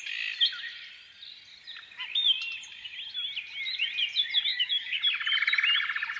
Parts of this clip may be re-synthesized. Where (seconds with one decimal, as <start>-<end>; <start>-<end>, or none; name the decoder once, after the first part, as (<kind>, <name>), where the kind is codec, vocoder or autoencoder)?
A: 4.5-5.0 (codec, DAC)